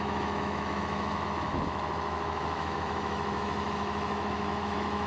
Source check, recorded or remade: remade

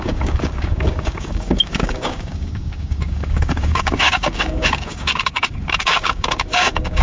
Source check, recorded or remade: remade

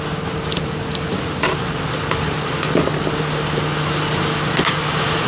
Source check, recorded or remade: recorded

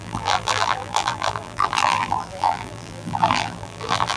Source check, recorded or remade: remade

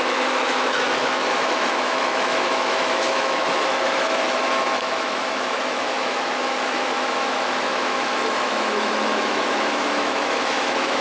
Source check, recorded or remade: remade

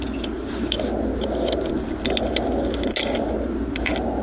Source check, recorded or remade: recorded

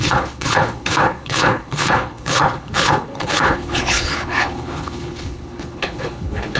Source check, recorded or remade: remade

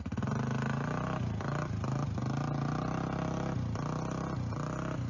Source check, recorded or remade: recorded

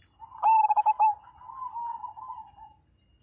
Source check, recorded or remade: recorded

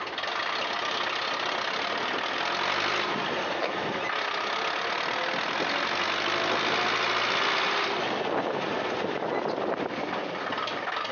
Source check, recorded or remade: recorded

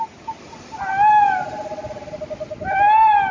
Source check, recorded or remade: recorded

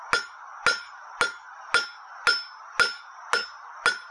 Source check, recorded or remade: recorded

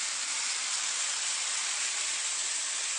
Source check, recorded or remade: recorded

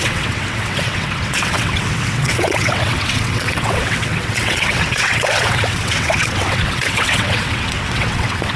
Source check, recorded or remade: remade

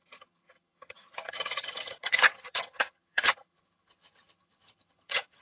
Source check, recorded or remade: remade